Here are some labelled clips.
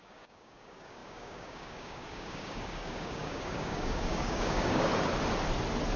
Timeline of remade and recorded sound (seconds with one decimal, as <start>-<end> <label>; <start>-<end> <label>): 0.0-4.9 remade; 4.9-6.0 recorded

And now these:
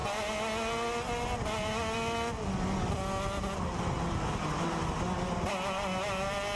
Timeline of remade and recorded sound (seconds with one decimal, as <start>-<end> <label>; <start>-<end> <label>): 0.0-6.6 recorded

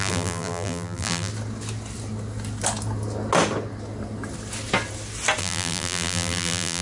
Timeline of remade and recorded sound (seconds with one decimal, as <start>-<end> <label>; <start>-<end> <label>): 0.0-1.3 remade; 1.3-5.4 recorded; 5.4-6.8 remade

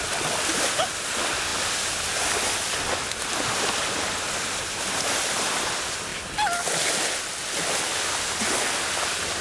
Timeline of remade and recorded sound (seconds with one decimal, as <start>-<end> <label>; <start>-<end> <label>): 0.0-9.4 recorded

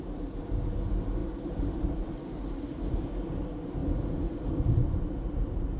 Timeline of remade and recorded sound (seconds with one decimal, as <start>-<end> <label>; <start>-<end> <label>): 0.0-5.8 recorded

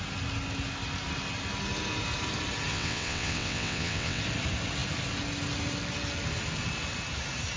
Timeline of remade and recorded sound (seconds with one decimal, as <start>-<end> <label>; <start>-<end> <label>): 0.0-2.7 recorded; 2.7-4.2 remade; 4.2-7.6 recorded

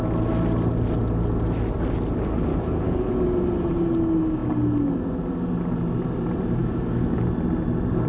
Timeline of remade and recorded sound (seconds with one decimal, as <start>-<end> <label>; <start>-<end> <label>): 0.0-2.5 recorded; 2.5-3.1 remade; 3.1-6.6 recorded; 6.6-7.2 remade; 7.2-8.1 recorded